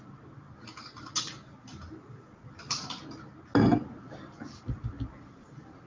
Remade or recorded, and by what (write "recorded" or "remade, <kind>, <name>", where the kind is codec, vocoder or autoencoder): recorded